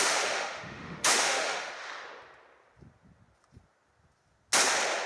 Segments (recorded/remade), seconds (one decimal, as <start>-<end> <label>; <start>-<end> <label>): 0.0-1.7 remade; 1.7-5.1 recorded